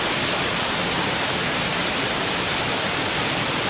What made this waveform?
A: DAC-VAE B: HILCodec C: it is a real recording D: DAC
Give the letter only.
C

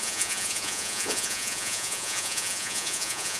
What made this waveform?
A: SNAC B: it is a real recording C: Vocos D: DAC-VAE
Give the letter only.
C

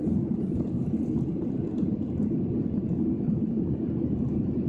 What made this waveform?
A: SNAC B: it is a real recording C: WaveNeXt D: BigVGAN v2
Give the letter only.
B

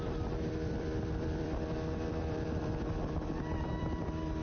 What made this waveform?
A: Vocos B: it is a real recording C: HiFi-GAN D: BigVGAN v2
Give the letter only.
D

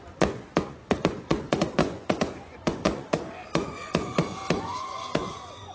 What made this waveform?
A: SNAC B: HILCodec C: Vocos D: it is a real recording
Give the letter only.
C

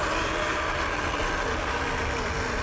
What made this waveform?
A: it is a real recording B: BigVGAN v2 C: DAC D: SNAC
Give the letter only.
A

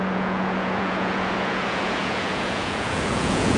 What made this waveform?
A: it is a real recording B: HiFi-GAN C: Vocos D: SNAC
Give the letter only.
C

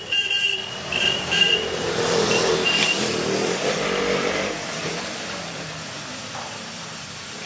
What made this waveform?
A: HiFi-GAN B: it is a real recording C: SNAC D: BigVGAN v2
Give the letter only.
D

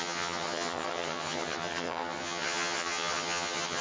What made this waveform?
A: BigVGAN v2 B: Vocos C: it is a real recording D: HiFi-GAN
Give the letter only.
D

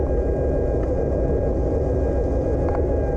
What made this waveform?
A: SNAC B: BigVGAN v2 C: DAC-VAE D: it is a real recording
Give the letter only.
D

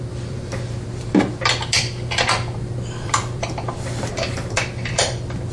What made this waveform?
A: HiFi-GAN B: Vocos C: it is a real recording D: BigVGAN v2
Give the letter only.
D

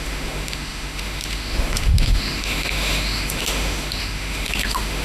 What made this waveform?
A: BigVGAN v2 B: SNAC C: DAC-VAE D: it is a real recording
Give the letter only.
C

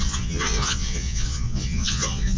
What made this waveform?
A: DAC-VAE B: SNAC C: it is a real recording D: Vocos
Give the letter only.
D